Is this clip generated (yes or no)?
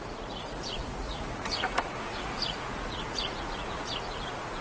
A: yes